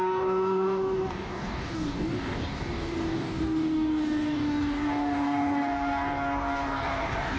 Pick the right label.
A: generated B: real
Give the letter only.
A